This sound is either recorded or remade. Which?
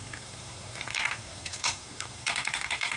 remade